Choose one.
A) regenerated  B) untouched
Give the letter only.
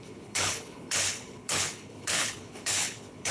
A